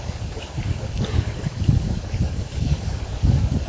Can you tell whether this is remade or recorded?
remade